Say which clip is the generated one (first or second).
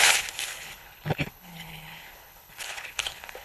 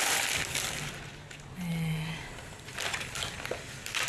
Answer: first